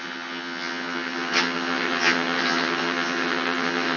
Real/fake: fake